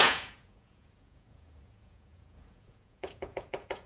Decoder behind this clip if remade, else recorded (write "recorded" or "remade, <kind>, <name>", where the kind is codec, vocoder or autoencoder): remade, vocoder, Vocos